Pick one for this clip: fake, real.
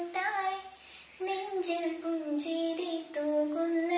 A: real